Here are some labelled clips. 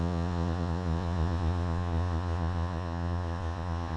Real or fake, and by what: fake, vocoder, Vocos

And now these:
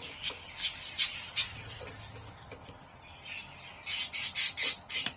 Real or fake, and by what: real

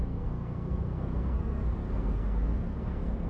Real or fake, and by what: fake, codec, SNAC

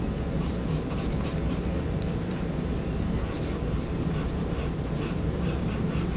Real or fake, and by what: fake, vocoder, BigVGAN v2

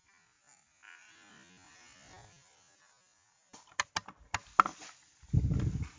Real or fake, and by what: real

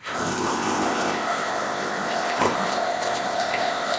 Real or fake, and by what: fake, codec, ZipCodec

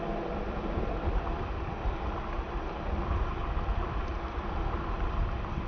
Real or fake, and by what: real